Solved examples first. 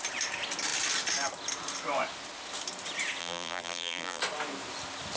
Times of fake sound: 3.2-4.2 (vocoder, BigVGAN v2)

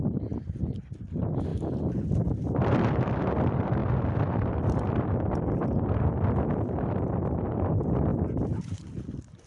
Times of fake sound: 0.0-9.5 (vocoder, BigVGAN v2)

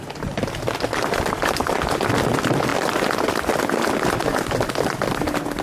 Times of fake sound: none